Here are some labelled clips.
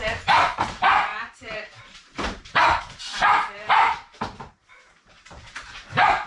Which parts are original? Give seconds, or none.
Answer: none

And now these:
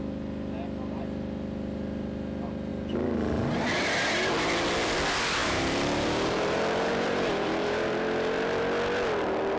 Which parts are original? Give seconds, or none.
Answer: 0.0-5.4; 8.6-9.6

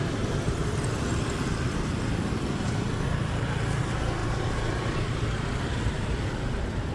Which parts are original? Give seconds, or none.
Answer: 0.0-0.6; 3.8-4.2

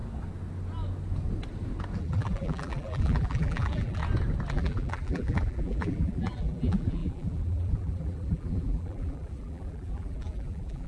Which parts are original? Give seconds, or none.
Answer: 0.0-2.0; 4.0-4.5

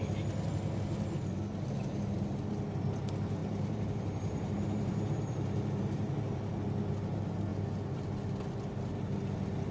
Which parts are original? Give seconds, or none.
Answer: 0.0-3.4; 6.5-9.7